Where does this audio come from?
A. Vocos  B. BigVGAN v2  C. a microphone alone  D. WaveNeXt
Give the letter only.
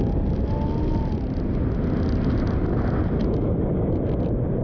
C